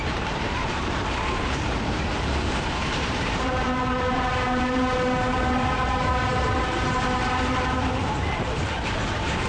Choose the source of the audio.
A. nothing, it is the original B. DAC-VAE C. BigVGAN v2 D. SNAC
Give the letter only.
C